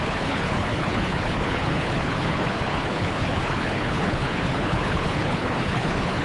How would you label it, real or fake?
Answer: fake